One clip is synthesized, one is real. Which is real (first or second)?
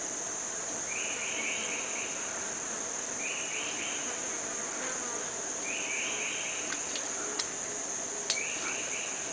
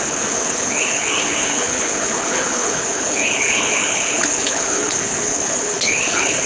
first